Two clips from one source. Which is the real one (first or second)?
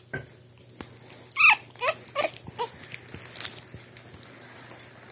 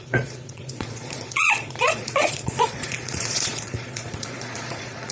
first